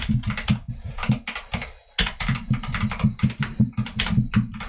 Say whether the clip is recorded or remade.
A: recorded